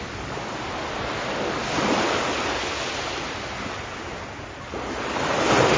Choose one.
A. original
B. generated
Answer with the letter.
A